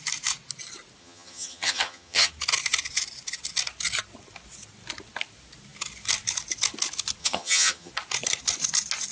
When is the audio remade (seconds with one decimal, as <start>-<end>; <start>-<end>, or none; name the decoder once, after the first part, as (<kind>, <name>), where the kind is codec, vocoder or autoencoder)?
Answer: 1.0-2.3 (vocoder, HiFi-GAN); 7.2-7.9